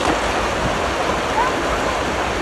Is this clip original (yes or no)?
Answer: yes